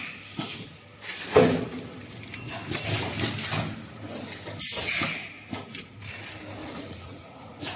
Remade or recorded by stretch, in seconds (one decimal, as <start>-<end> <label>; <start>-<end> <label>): 0.0-6.6 recorded; 6.6-7.8 remade